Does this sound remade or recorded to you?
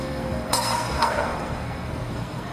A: remade